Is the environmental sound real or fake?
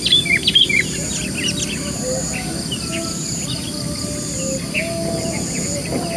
real